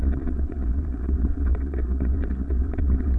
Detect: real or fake fake